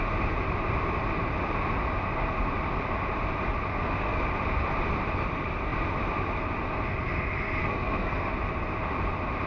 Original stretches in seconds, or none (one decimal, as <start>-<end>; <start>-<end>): 0.0-3.7; 4.2-7.6; 8.3-9.5